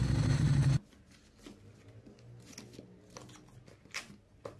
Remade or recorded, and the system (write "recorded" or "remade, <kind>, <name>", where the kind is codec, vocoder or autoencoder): recorded